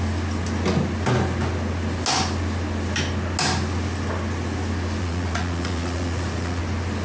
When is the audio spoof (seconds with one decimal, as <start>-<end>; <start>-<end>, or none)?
5.0-6.6